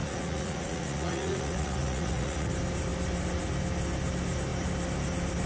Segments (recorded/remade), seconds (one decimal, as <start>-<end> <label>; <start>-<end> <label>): 0.0-2.5 remade; 2.5-5.5 recorded